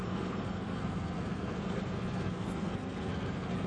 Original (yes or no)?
no